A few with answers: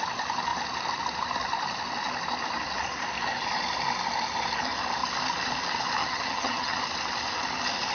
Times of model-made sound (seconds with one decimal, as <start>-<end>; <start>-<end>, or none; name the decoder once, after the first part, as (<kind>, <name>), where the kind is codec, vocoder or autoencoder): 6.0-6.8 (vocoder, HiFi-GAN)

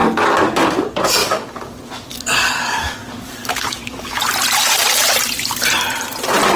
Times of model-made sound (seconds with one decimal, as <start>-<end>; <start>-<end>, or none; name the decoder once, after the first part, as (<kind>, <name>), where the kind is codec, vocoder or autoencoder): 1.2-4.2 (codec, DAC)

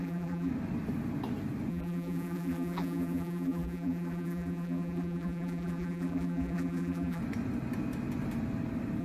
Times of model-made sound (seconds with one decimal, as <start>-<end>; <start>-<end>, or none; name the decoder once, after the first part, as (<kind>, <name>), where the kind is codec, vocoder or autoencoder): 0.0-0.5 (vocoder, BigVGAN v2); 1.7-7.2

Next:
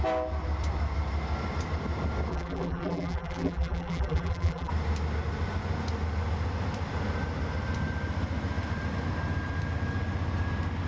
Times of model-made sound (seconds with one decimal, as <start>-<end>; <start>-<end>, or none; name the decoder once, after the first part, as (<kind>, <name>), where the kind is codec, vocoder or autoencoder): 2.3-4.7 (vocoder, BigVGAN v2)

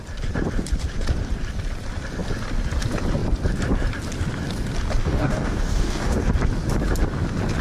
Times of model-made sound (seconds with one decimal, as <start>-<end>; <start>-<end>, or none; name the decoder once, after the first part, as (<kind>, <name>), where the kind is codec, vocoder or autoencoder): 5.0-6.3 (codec, DAC)

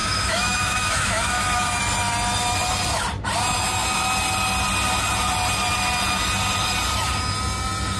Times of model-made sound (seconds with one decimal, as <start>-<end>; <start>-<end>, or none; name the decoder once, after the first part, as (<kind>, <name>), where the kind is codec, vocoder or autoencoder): 0.0-1.8 (autoencoder, DAC-VAE)

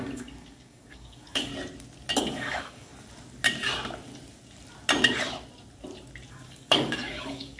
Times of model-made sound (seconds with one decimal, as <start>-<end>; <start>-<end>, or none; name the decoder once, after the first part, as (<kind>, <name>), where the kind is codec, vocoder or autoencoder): 0.0-1.5 (codec, DAC); 2.2-2.9; 6.3-7.6